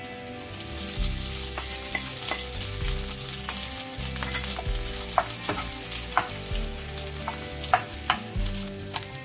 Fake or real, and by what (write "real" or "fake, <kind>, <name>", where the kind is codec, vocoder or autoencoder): real